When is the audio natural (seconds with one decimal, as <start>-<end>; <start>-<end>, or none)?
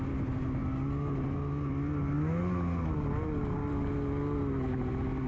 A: 0.0-5.3